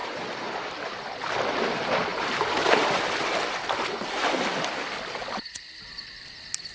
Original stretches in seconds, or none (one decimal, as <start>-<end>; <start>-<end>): 0.9-2.1; 2.7-6.7